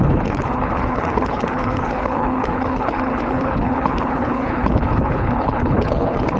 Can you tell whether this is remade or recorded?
remade